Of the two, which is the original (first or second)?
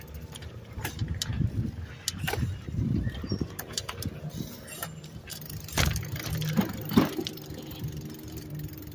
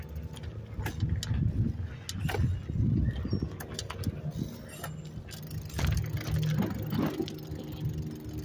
second